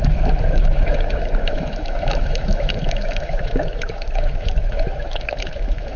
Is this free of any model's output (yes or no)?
no